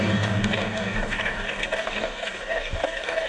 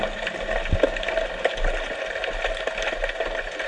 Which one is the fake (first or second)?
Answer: first